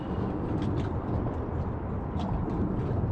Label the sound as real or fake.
real